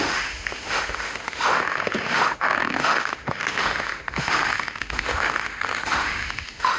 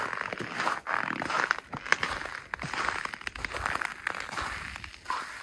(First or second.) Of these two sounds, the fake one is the first